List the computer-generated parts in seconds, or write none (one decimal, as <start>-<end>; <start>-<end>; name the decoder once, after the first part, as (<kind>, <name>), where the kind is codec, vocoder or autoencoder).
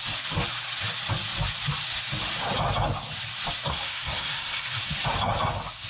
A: 3.7-4.8 (codec, SNAC)